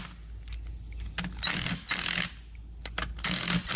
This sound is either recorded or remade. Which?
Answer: recorded